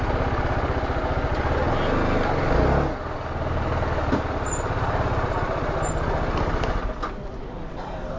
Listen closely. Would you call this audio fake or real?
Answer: real